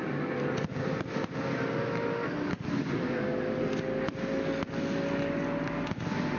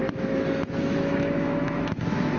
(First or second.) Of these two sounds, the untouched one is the first